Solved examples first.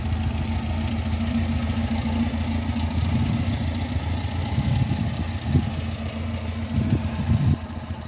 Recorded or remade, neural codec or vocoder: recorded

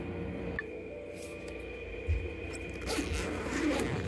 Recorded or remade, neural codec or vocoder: recorded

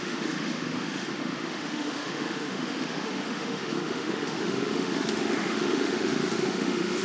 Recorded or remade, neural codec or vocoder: remade, autoencoder, DAC-VAE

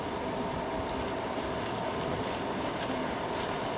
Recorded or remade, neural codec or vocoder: recorded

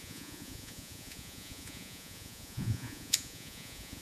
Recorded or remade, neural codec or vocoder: remade, vocoder, Vocos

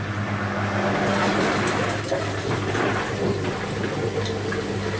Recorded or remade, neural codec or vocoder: recorded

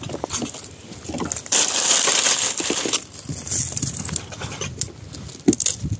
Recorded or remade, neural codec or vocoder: recorded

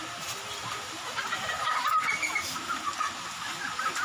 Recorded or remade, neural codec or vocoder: recorded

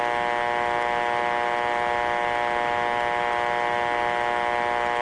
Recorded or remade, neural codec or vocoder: recorded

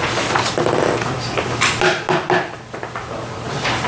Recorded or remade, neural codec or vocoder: recorded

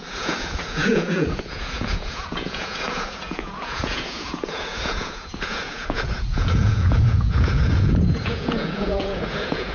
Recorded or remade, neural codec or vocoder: remade, vocoder, Vocos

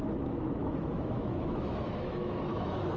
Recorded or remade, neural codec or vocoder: remade, autoencoder, DAC-VAE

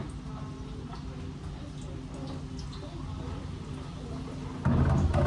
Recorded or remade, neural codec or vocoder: recorded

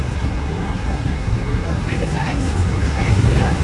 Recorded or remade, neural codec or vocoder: remade, codec, SNAC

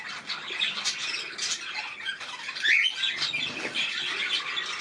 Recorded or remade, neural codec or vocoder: recorded